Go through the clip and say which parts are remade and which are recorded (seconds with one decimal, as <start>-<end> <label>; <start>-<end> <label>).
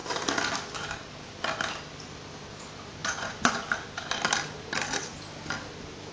0.0-3.0 recorded; 3.0-3.5 remade; 3.5-6.1 recorded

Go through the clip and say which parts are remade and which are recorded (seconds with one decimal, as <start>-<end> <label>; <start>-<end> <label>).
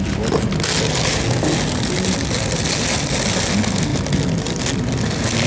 0.0-5.5 recorded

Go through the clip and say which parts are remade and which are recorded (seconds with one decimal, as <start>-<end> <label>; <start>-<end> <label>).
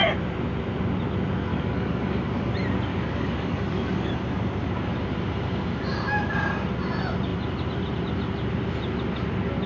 0.0-1.5 recorded; 1.5-2.5 remade; 2.5-2.9 recorded; 2.9-4.1 remade; 4.1-9.7 recorded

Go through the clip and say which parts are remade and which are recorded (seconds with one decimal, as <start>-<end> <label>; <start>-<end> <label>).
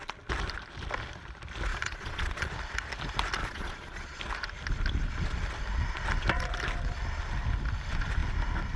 0.0-1.7 recorded; 1.7-2.5 remade; 2.5-3.4 recorded; 3.4-4.2 remade; 4.2-8.8 recorded